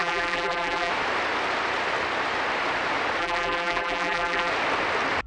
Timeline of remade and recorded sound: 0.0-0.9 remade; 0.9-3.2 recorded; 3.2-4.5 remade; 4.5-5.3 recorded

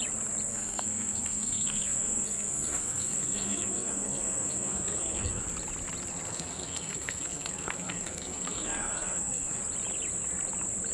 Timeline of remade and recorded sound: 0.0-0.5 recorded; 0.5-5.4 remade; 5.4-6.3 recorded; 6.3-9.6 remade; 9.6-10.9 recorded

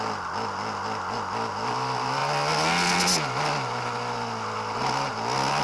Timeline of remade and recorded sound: 0.0-5.6 recorded

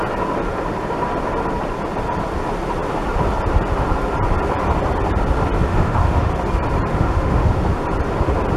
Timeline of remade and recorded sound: 0.0-5.7 recorded; 5.7-6.3 remade; 6.3-6.9 recorded; 6.9-7.5 remade; 7.5-8.6 recorded

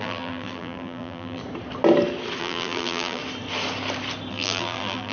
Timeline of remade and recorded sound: 0.0-1.4 remade; 1.4-2.4 recorded; 2.4-3.2 remade; 3.2-4.3 recorded; 4.3-5.1 remade

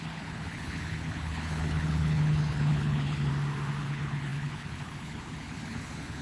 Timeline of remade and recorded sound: 0.0-3.3 remade; 3.3-3.8 recorded; 3.8-6.2 remade

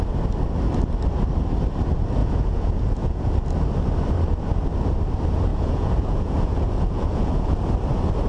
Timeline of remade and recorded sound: 0.0-2.2 recorded; 2.2-3.3 remade; 3.3-5.5 recorded; 5.5-7.5 remade; 7.5-8.3 recorded